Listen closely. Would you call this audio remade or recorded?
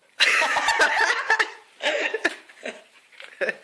remade